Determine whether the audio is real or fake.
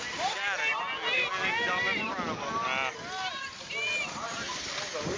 real